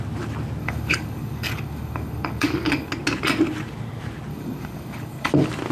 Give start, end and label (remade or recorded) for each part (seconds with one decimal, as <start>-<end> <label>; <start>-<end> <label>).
0.0-0.6 recorded; 0.6-2.9 remade; 2.9-4.3 recorded; 4.3-5.3 remade; 5.3-5.7 recorded